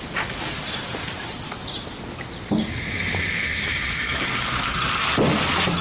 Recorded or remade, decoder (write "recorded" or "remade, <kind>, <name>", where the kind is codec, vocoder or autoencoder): recorded